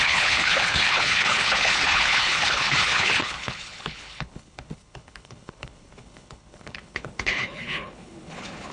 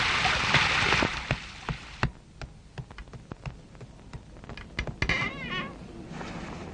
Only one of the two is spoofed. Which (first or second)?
first